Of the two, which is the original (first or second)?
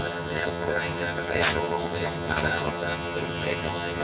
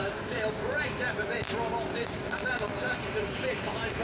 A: second